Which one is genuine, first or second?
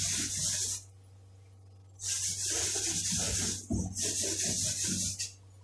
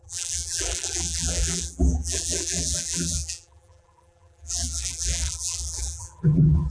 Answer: first